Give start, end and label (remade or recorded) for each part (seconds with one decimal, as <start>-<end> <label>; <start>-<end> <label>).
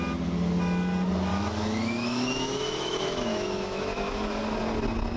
0.0-1.3 recorded; 1.3-4.4 remade; 4.4-5.2 recorded